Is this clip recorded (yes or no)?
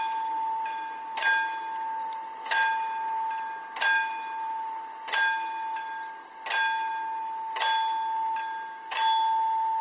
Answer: yes